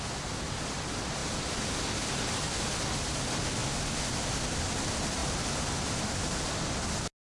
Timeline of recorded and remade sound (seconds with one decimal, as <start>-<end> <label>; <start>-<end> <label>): 0.0-7.3 recorded